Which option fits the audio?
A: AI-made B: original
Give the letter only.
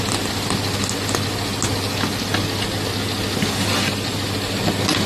B